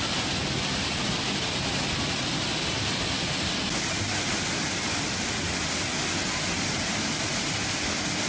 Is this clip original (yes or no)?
yes